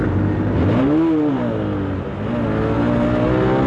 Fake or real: real